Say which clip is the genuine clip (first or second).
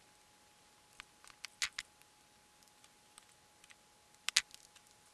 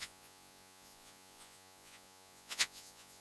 first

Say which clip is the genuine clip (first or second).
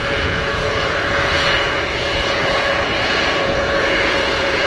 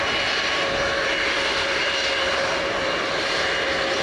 second